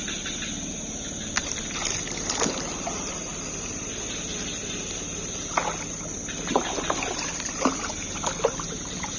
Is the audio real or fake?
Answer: real